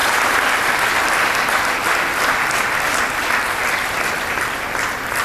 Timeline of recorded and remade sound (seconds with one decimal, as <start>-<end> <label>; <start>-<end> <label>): 0.0-5.2 remade

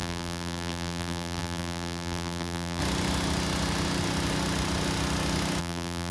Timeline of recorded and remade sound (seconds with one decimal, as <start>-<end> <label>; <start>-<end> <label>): 0.0-2.8 remade; 2.8-5.6 recorded; 5.6-6.1 remade

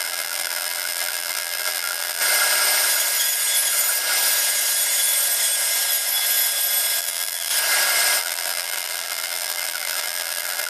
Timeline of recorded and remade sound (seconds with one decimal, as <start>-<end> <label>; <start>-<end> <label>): 0.0-2.2 remade; 2.2-7.0 recorded; 7.0-7.5 remade; 7.5-8.2 recorded; 8.2-10.7 remade

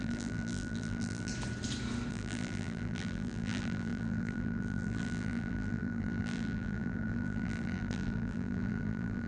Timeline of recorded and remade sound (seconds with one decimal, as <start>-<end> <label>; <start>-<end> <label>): 0.0-1.3 remade; 1.3-2.1 recorded; 2.1-9.3 remade